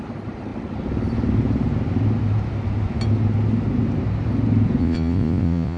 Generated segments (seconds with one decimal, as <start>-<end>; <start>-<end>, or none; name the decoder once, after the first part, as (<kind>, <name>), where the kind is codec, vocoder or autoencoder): 4.8-5.8 (vocoder, Vocos)